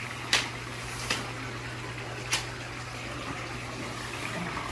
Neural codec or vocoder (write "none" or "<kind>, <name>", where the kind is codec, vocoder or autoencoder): none